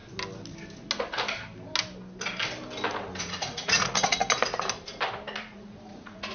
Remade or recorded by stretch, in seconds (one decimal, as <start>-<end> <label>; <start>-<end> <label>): 0.0-3.2 recorded; 3.2-4.2 remade; 4.2-5.4 recorded; 5.4-6.3 remade